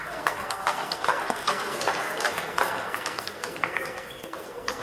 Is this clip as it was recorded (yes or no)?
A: no